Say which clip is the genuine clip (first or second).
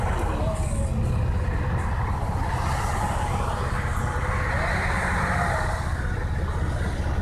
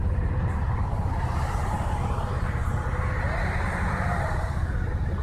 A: first